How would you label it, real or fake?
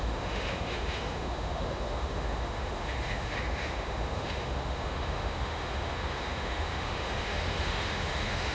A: fake